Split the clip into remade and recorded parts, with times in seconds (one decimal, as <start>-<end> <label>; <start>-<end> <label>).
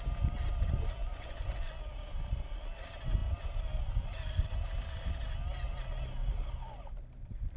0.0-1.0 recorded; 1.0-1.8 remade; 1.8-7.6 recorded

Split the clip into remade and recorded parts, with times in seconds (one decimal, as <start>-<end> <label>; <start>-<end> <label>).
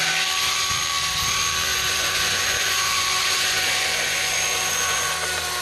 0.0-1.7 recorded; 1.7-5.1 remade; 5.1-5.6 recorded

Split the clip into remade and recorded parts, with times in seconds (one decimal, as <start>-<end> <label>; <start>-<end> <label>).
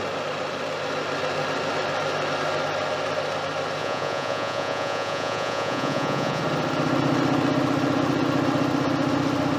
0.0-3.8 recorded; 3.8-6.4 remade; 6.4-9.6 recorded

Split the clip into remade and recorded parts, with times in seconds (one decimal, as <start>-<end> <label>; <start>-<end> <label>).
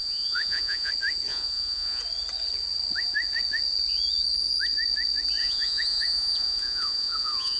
0.0-0.9 remade; 0.9-1.3 recorded; 1.3-2.0 remade; 2.0-5.4 recorded; 5.4-7.6 remade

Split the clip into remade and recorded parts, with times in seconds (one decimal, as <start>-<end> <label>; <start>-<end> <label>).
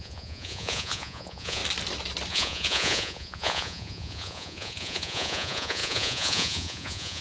0.0-1.6 remade; 1.6-2.3 recorded; 2.3-7.2 remade